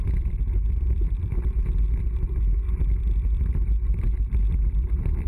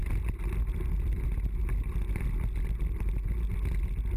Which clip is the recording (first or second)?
second